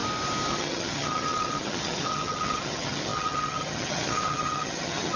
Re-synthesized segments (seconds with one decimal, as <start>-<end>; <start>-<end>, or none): 0.5-5.2